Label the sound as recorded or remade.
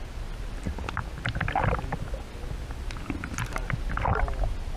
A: recorded